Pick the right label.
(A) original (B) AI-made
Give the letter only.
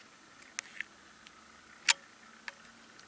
A